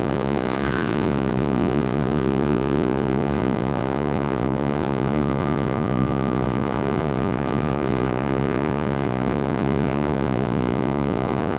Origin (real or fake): fake